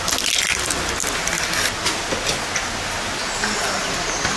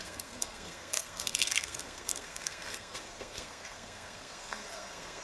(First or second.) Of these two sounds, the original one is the first